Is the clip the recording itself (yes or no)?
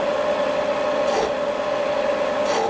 yes